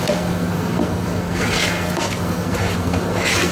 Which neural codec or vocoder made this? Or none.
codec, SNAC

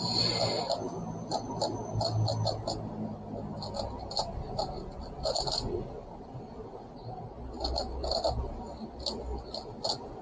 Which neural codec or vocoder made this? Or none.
none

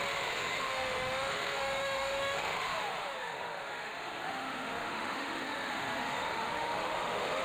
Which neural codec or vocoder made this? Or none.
autoencoder, DAC-VAE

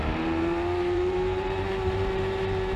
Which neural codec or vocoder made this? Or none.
vocoder, BigVGAN v2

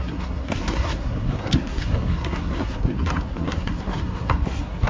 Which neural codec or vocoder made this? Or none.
codec, SNAC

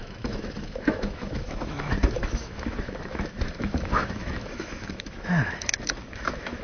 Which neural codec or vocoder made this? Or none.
autoencoder, DAC-VAE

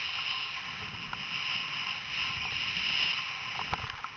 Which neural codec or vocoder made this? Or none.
none